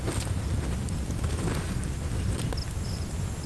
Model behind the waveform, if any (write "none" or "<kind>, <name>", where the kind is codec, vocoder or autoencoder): none